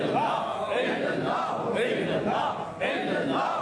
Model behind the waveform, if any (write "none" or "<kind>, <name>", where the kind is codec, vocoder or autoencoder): none